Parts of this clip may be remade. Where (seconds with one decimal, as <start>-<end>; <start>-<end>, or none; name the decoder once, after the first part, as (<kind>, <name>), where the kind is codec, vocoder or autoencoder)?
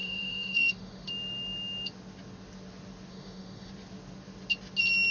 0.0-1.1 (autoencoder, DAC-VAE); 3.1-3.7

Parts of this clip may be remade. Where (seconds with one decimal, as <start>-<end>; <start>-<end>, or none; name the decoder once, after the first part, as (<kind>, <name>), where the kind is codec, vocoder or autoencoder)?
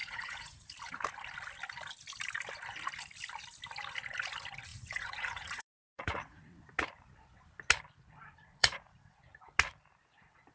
0.0-0.7 (vocoder, Vocos); 4.7-6.4; 8.6-9.2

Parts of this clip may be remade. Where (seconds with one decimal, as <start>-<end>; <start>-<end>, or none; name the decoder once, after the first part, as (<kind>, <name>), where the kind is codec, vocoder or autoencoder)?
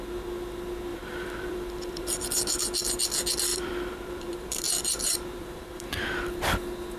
0.9-2.2 (vocoder, BigVGAN v2); 3.5-6.0